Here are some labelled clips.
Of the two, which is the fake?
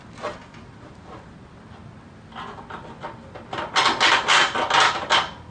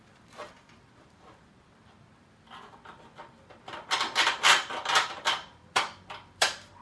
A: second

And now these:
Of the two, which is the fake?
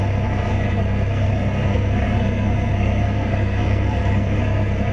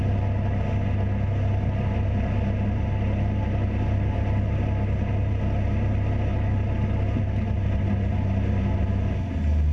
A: first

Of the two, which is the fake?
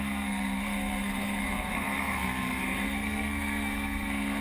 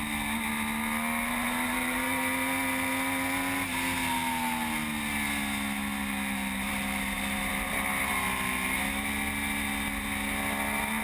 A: first